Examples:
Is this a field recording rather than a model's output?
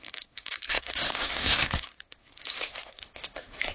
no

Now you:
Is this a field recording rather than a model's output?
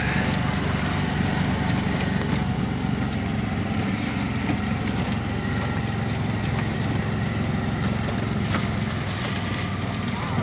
yes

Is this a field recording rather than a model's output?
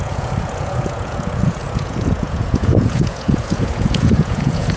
no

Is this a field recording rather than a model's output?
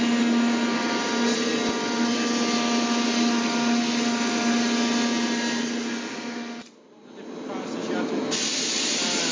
yes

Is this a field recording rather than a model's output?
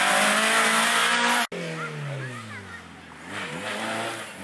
yes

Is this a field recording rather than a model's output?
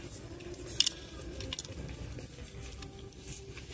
yes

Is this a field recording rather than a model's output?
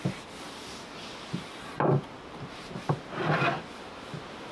yes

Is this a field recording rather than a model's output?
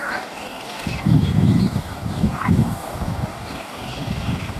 no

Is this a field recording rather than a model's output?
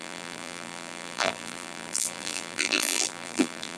no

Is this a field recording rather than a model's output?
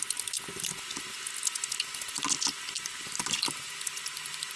yes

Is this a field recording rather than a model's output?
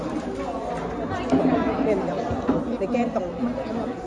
yes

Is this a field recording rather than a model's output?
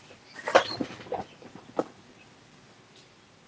yes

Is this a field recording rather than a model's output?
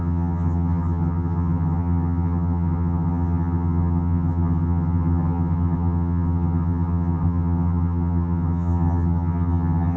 no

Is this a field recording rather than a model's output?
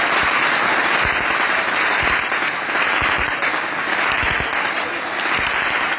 yes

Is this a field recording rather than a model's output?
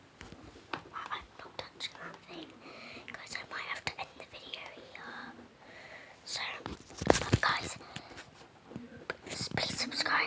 yes